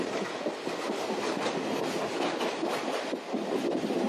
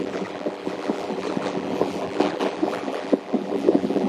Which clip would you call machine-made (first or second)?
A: second